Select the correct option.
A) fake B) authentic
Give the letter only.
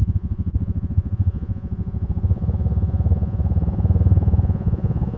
A